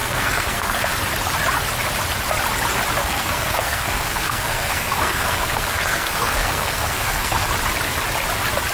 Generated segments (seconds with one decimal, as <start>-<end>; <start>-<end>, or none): 0.0-0.9; 3.0-7.5